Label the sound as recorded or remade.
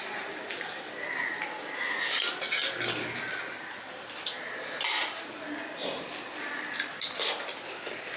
recorded